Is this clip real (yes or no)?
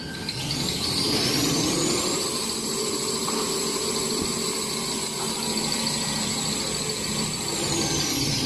yes